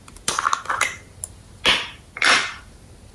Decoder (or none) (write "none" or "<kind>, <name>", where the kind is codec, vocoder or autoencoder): none